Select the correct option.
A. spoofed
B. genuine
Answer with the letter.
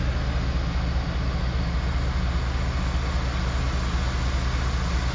B